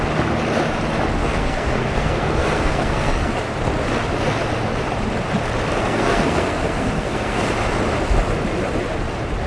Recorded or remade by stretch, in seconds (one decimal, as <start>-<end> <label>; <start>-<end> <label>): 0.0-1.2 recorded; 1.2-3.3 remade; 3.3-5.8 recorded; 5.8-7.4 remade; 7.4-9.5 recorded

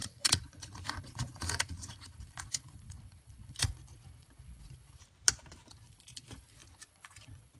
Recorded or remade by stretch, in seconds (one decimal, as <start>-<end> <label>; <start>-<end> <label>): 0.0-5.0 remade; 5.0-5.7 recorded; 5.7-7.6 remade

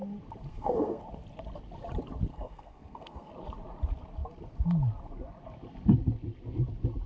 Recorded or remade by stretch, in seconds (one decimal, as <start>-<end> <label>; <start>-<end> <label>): 0.0-0.5 recorded; 0.5-1.0 remade; 1.0-2.3 recorded; 2.3-3.3 remade; 3.3-7.1 recorded

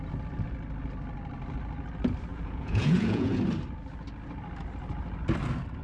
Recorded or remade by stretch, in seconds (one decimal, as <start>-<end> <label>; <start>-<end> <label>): 0.0-2.3 recorded; 2.3-3.3 remade; 3.3-5.8 recorded